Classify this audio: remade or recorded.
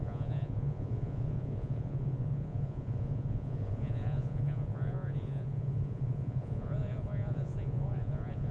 remade